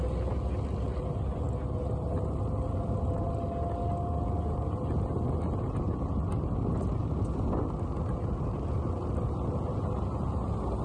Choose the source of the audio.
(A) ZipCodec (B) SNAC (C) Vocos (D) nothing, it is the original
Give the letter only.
D